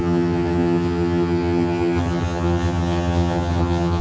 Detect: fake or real fake